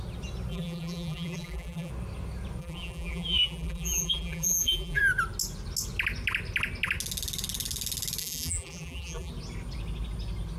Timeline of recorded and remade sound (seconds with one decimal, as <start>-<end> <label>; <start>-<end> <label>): 0.0-0.5 recorded; 0.5-1.9 remade; 1.9-2.6 recorded; 2.6-5.0 remade; 5.0-8.2 recorded; 8.2-9.3 remade; 9.3-10.6 recorded

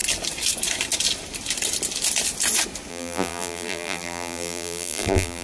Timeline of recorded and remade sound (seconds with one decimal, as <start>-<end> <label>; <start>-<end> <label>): 0.0-2.9 recorded; 2.9-5.4 remade

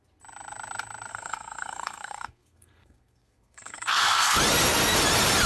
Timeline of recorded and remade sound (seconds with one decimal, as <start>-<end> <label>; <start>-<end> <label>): 0.0-1.1 recorded; 1.1-4.4 remade; 4.4-5.5 recorded

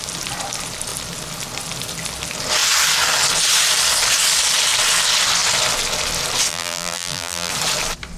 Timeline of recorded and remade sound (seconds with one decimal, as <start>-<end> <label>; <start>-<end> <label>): 0.0-6.5 recorded; 6.5-7.5 remade; 7.5-8.2 recorded

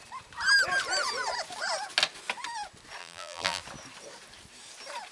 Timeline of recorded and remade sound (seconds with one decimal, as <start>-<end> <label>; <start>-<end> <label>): 0.0-3.0 recorded; 3.0-3.6 remade; 3.6-5.1 recorded

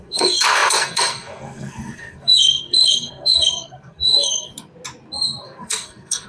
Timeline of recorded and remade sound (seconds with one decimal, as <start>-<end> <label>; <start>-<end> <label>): 0.0-4.5 remade; 4.5-5.4 recorded; 5.4-6.3 remade

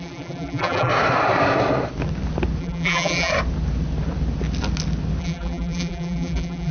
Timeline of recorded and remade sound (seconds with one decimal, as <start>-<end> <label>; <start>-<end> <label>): 0.0-0.9 remade; 0.9-2.6 recorded; 2.6-3.3 remade; 3.3-5.2 recorded; 5.2-6.7 remade